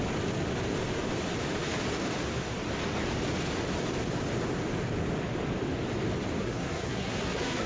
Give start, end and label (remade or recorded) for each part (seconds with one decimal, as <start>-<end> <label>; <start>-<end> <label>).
0.0-6.4 recorded; 6.4-7.7 remade